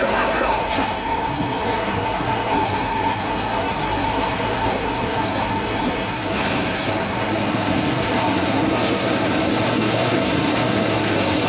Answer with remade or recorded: remade